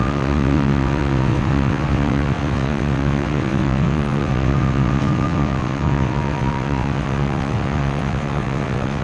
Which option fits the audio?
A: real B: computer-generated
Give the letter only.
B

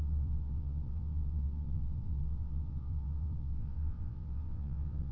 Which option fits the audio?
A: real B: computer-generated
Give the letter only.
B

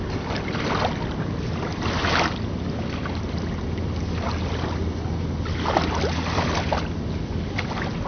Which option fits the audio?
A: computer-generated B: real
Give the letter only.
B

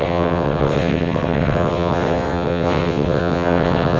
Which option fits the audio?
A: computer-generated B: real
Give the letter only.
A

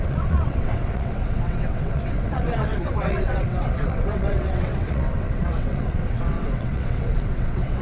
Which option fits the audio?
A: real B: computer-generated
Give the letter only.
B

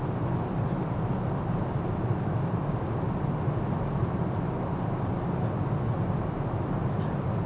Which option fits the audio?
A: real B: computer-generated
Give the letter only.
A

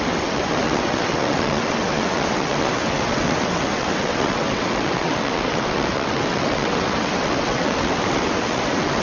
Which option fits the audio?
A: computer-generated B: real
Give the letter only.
A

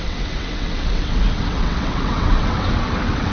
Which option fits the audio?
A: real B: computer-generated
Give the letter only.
B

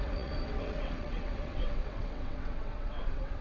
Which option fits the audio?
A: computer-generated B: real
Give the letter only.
A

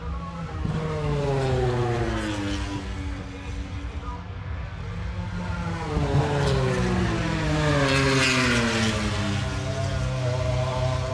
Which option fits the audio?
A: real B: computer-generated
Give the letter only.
A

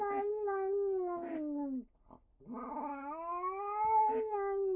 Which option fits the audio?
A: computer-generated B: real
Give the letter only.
B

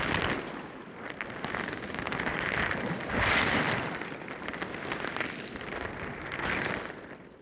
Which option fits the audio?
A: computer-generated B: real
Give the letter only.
B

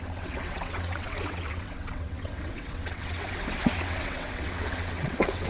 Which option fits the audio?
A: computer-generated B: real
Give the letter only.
A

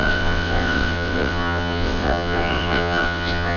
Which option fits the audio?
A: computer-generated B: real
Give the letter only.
A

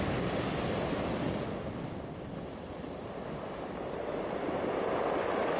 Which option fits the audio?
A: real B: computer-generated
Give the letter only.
A